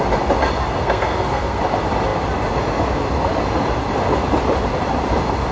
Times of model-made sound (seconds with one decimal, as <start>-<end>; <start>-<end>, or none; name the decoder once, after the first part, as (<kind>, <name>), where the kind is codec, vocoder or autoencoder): 0.8-1.6 (codec, SNAC)